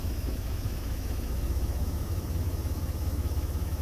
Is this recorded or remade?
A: remade